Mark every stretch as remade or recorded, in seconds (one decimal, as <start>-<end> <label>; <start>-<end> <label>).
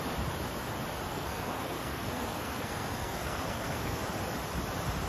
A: 0.0-1.1 recorded; 1.1-4.0 remade; 4.0-5.1 recorded